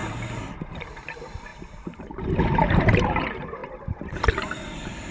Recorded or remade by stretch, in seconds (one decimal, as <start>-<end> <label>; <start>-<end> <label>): 0.0-0.6 recorded; 0.6-5.1 remade